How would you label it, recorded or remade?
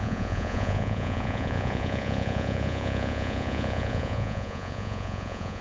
remade